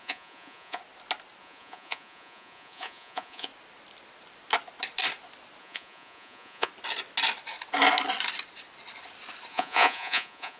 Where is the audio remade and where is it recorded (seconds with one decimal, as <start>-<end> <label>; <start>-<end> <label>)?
0.0-0.8 remade; 0.8-1.4 recorded; 1.4-3.5 remade; 3.5-5.6 recorded; 5.6-6.7 remade; 6.7-9.5 recorded; 9.5-10.6 remade